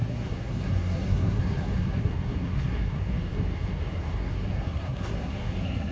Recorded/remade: remade